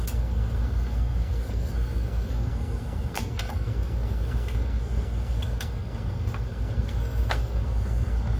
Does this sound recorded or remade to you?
remade